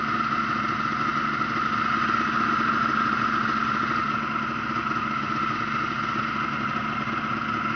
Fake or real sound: real